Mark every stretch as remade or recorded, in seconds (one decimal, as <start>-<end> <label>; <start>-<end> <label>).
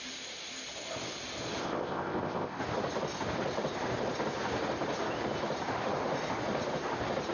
0.0-1.6 recorded; 1.6-2.6 remade; 2.6-7.3 recorded